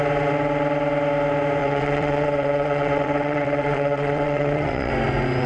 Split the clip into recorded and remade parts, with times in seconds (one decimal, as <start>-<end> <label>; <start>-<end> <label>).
0.0-1.6 recorded; 1.6-4.9 remade; 4.9-5.5 recorded

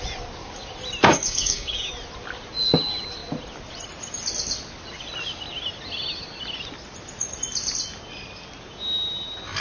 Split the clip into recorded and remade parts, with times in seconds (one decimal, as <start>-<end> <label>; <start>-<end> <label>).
0.0-1.1 recorded; 1.1-1.9 remade; 1.9-9.6 recorded

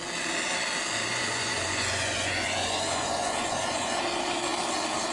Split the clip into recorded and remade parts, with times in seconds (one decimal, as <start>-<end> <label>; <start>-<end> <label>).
0.0-1.1 recorded; 1.1-4.0 remade; 4.0-5.1 recorded

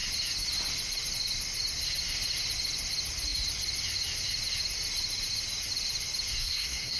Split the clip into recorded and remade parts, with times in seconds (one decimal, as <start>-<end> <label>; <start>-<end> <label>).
0.0-6.4 recorded; 6.4-7.0 remade

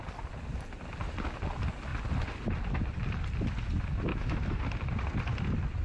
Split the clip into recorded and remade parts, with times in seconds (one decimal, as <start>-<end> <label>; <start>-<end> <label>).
0.0-4.1 recorded; 4.1-4.6 remade; 4.6-5.8 recorded

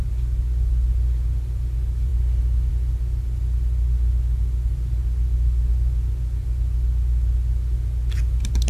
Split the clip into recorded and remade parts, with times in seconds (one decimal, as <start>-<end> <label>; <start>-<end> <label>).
0.0-8.7 recorded

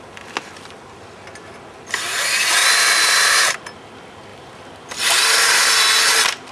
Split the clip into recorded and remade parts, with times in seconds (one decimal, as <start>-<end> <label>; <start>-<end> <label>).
0.0-2.6 recorded; 2.6-3.4 remade; 3.4-4.3 recorded; 4.3-5.8 remade; 5.8-6.5 recorded